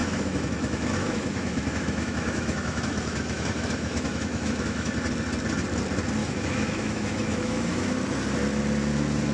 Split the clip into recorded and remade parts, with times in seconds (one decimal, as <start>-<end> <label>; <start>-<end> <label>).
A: 0.0-4.9 remade; 4.9-6.2 recorded; 6.2-7.9 remade; 7.9-9.3 recorded